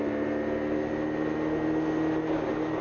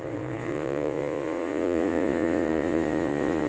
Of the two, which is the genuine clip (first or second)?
first